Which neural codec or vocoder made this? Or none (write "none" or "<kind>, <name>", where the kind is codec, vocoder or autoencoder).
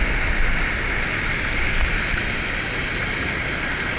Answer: none